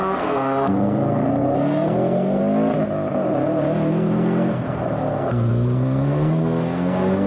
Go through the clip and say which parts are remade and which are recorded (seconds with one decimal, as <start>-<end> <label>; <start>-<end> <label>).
0.0-2.4 remade; 2.4-3.9 recorded; 3.9-7.3 remade